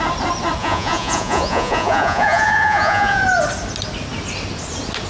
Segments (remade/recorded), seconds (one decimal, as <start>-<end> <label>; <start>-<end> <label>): 0.0-0.6 recorded; 0.6-3.2 remade; 3.2-5.1 recorded